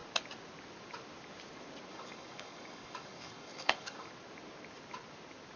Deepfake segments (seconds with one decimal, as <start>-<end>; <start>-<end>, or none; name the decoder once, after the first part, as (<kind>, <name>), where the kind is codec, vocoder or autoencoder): 1.9-4.1 (codec, DAC)